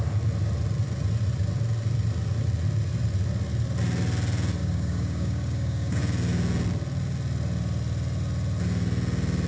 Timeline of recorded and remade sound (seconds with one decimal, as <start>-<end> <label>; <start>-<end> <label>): 0.0-4.6 recorded; 4.6-6.0 remade; 6.0-9.5 recorded